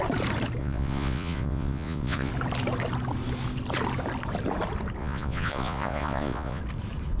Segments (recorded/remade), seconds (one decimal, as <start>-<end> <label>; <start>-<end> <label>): 0.0-0.6 recorded; 0.6-2.3 remade; 2.3-5.0 recorded; 5.0-6.6 remade; 6.6-7.2 recorded